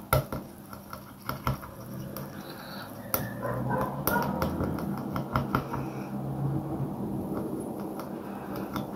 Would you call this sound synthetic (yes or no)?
no